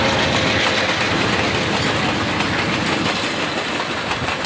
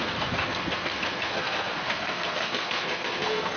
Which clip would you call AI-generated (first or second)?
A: second